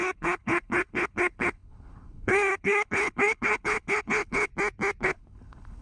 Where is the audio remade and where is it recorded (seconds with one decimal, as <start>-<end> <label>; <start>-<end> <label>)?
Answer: 0.0-4.5 remade; 4.5-5.0 recorded; 5.0-5.8 remade